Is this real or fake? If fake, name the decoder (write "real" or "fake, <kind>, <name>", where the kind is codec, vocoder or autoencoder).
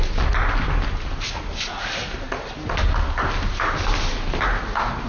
real